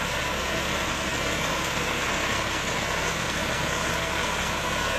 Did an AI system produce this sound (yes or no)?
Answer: yes